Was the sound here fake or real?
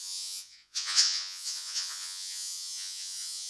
fake